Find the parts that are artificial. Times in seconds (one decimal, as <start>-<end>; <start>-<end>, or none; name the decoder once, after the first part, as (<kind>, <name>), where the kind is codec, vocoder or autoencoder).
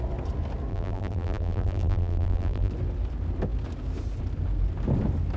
0.7-2.7 (vocoder, BigVGAN v2)